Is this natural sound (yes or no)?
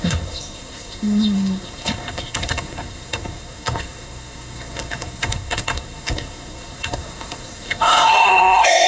no